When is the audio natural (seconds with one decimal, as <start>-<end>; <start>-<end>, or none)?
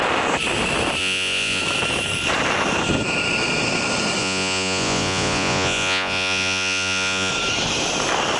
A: 0.0-1.0; 1.6-4.2; 7.3-8.4